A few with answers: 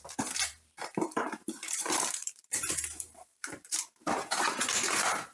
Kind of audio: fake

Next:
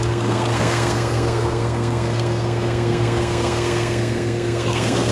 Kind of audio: fake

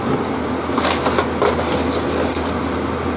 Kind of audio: real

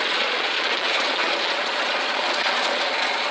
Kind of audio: fake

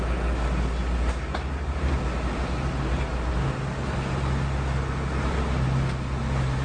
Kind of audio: real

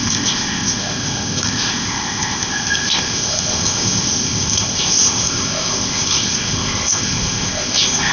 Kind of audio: fake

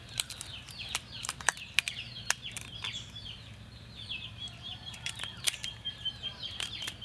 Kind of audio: fake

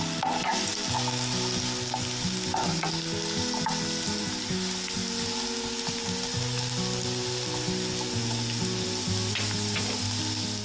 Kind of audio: real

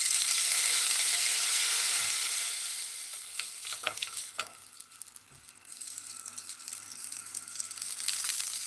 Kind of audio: fake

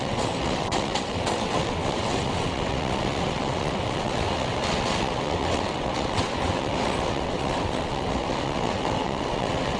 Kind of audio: fake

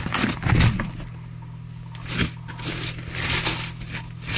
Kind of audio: real